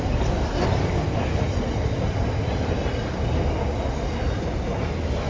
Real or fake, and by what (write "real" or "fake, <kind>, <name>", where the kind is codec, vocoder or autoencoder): real